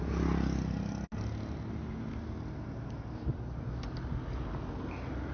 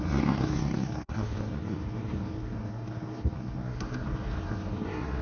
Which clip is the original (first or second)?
first